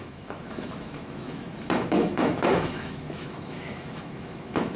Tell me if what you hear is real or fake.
fake